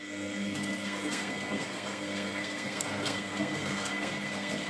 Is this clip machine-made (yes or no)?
yes